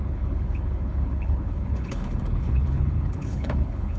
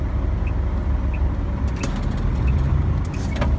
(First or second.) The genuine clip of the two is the second